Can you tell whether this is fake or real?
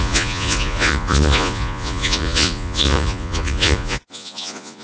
fake